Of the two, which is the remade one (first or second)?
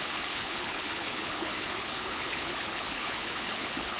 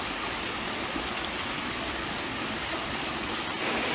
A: first